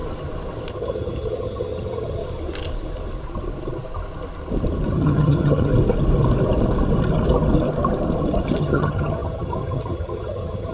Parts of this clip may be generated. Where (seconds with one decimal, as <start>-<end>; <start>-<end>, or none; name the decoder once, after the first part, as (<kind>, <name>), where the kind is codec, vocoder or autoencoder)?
0.7-2.2 (vocoder, HiFi-GAN); 4.9-5.7; 8.6-10.7